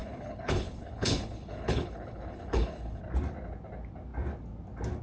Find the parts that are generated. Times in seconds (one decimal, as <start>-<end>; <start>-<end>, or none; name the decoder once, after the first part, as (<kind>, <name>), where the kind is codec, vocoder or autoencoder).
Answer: 0.0-3.0 (codec, HILCodec)

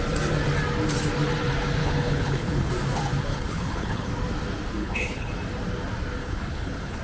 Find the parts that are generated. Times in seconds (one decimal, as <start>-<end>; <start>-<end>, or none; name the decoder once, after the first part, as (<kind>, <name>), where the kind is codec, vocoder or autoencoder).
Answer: 1.8-2.7 (codec, HILCodec); 3.3-4.1; 4.8-5.3; 6.2-7.0

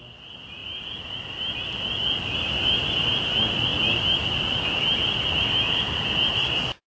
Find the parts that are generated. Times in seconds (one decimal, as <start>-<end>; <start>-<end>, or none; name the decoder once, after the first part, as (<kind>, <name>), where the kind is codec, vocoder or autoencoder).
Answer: none

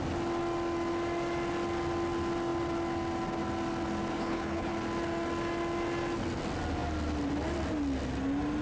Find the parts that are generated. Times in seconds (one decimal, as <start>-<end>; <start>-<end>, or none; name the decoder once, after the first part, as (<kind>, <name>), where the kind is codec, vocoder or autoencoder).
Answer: 4.1-4.7 (codec, HILCodec)

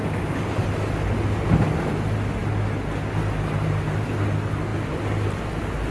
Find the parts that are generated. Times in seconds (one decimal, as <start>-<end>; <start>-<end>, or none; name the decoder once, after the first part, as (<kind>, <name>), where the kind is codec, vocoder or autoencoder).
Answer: none

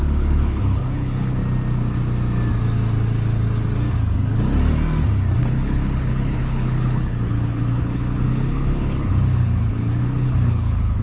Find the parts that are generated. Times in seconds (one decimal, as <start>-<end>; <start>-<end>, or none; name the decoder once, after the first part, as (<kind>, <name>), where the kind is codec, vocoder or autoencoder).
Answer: 0.0-1.4 (codec, HILCodec); 5.4-11.0